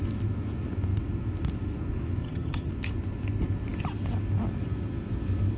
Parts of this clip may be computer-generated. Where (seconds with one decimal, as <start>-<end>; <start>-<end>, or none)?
2.2-2.7